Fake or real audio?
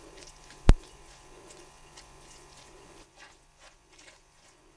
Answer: fake